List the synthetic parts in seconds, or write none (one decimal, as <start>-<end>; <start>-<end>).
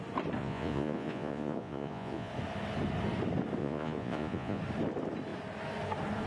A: 0.4-2.3; 3.6-4.6